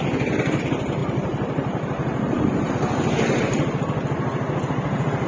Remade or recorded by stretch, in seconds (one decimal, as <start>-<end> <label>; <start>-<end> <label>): 0.0-1.0 recorded; 1.0-2.7 remade; 2.7-5.3 recorded